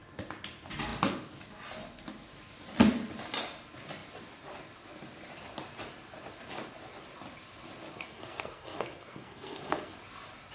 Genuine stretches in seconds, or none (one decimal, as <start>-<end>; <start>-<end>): 0.0-7.9; 10.0-10.5